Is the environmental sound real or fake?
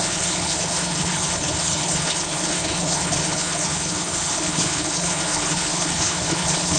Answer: fake